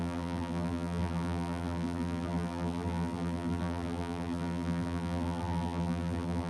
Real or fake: fake